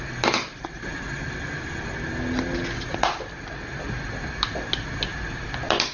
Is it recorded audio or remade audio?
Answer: recorded